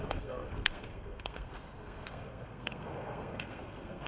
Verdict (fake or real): fake